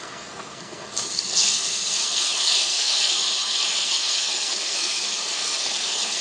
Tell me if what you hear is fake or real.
fake